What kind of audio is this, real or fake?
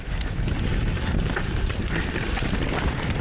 real